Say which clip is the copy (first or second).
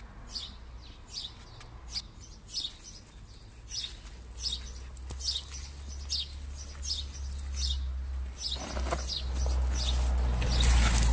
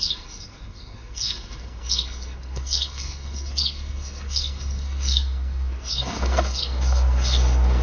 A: second